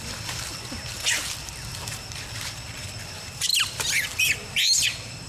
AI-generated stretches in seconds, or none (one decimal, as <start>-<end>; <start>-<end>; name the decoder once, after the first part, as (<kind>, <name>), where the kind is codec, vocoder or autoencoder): 0.0-1.7 (vocoder, BigVGAN v2); 2.5-5.3